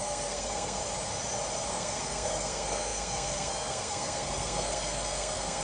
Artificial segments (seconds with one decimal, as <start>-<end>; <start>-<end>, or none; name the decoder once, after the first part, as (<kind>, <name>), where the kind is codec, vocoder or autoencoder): 0.0-0.8 (codec, SNAC); 1.7-5.6